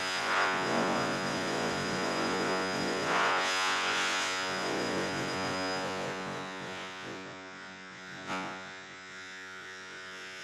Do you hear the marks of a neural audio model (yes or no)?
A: yes